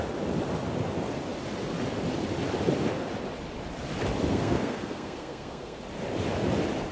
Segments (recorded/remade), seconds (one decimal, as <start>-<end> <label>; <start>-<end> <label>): 0.0-4.3 recorded; 4.3-5.8 remade; 5.8-6.9 recorded

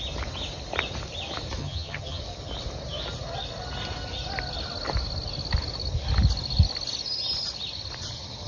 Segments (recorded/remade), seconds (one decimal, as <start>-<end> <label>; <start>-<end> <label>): 0.0-1.6 recorded; 1.6-2.2 remade; 2.2-8.5 recorded

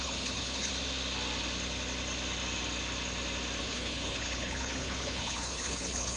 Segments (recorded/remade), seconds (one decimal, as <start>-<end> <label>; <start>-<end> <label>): 0.0-0.7 remade; 0.7-3.6 recorded; 3.6-6.2 remade